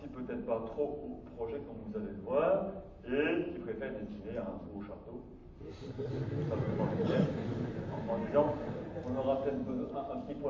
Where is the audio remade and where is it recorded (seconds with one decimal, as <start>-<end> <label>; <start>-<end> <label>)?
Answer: 0.0-10.5 recorded